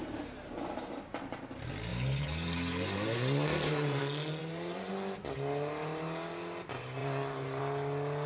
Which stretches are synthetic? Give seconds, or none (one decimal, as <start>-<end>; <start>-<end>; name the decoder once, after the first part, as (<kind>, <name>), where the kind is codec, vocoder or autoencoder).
0.0-0.8 (vocoder, BigVGAN v2); 1.9-4.0; 4.4-4.9; 7.0-7.6